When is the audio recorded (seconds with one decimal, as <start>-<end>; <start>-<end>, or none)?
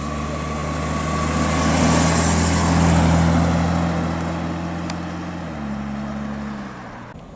0.0-7.4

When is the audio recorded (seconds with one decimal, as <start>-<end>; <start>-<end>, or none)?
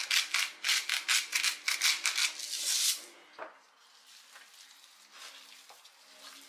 0.0-6.5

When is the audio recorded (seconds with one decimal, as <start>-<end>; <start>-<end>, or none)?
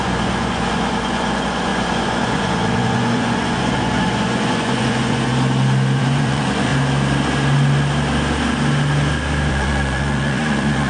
5.3-6.0; 6.7-9.5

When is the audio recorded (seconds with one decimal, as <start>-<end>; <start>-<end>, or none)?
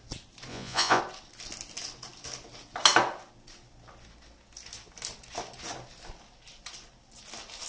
0.0-0.5; 1.0-7.7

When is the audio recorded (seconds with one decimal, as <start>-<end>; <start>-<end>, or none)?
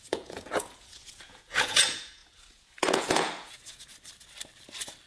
3.9-5.1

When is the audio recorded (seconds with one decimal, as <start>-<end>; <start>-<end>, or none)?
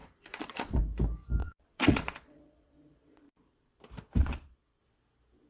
0.8-1.4; 3.8-4.2; 4.8-5.5